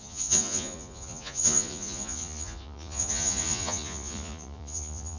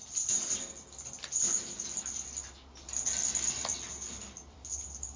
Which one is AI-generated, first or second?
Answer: first